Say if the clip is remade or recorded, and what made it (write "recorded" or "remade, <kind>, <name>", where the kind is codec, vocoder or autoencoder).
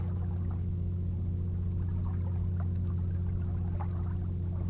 remade, vocoder, BigVGAN v2